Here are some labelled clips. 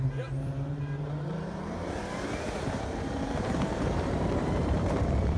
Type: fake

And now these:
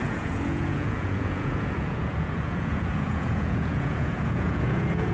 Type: fake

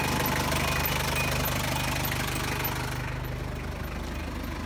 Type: real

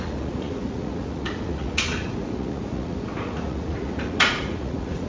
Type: fake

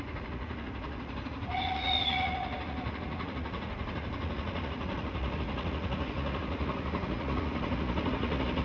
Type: fake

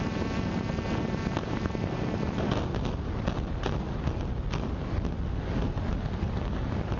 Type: real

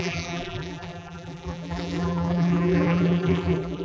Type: fake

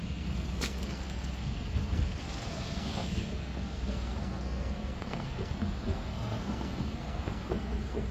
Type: fake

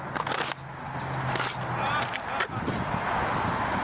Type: real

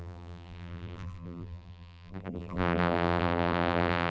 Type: fake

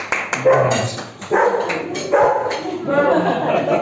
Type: real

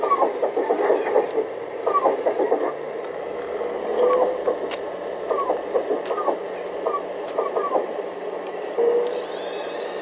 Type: real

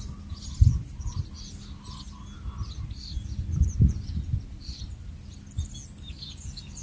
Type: real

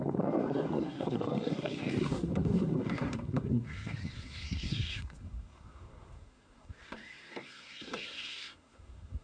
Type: fake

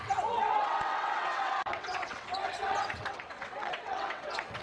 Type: fake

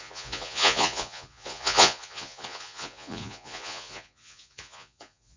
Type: fake